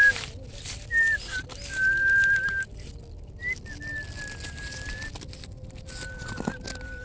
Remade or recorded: recorded